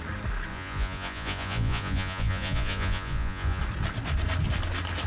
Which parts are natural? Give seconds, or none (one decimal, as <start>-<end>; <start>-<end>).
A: 0.0-0.5; 3.6-5.1